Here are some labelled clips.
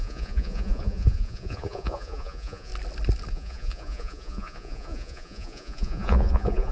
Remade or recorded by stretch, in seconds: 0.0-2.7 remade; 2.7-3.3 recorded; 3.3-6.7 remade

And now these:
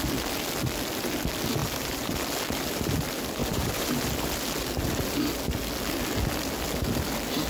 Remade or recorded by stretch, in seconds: 0.0-1.6 recorded; 1.6-2.1 remade; 2.1-3.4 recorded; 3.4-3.9 remade; 3.9-7.5 recorded

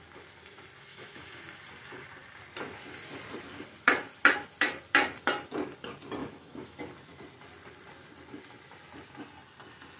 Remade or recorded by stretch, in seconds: 0.0-0.9 recorded; 0.9-1.4 remade; 1.4-6.2 recorded; 6.2-6.8 remade; 6.8-10.0 recorded